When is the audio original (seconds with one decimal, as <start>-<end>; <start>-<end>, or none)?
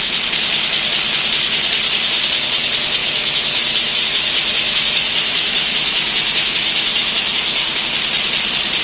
0.0-3.0; 7.8-8.8